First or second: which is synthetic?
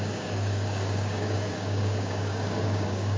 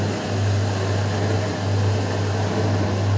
first